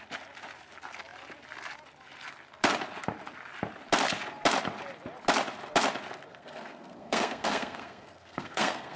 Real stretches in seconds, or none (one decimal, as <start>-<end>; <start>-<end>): 0.0-6.3